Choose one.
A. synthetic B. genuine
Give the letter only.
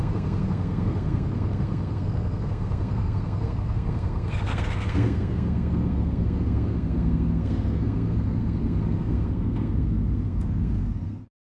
A